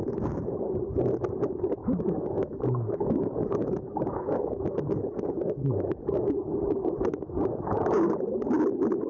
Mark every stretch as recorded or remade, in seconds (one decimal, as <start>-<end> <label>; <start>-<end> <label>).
0.0-1.8 recorded; 1.8-6.6 remade; 6.6-7.1 recorded; 7.1-8.1 remade; 8.1-9.1 recorded